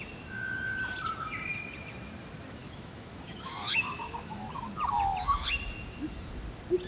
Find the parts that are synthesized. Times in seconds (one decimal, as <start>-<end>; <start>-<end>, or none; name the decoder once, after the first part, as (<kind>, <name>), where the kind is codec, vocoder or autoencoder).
2.6-4.5 (autoencoder, DAC-VAE)